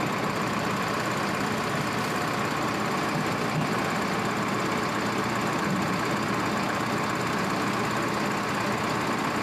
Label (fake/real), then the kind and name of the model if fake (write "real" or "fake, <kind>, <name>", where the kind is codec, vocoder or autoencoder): real